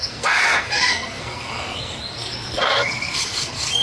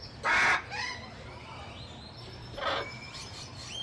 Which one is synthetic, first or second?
first